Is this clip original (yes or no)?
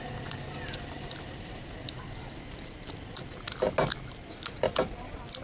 yes